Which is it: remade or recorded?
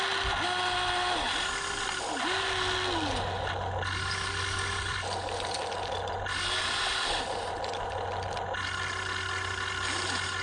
recorded